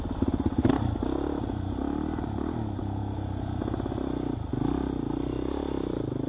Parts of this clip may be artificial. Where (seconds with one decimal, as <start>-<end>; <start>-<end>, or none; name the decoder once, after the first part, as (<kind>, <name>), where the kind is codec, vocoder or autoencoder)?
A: none